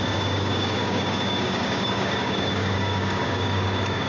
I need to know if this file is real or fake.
fake